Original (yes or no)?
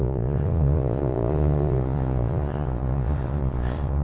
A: no